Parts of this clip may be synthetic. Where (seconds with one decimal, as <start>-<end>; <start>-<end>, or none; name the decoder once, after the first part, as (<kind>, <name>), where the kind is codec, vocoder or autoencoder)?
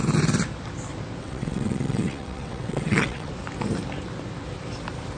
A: 1.2-3.3 (vocoder, WaveNeXt)